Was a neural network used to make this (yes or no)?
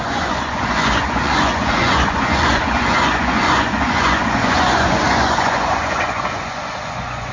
yes